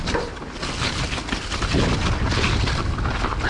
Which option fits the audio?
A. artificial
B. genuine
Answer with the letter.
B